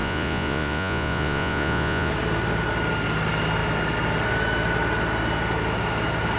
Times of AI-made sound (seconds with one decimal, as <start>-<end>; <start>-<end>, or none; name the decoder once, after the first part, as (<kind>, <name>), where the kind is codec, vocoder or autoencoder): 0.0-2.1 (vocoder, Vocos)